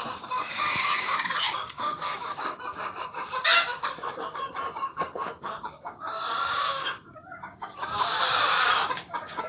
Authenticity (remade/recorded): remade